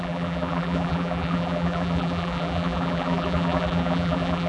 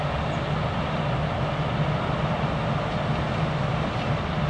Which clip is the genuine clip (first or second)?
second